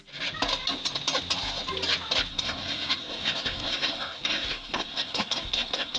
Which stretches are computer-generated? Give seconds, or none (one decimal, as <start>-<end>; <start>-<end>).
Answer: 2.3-6.0

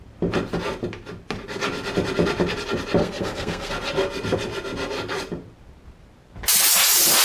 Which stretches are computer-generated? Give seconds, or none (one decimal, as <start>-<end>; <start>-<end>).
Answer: 3.0-3.7